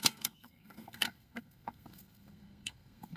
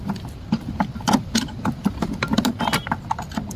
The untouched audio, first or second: second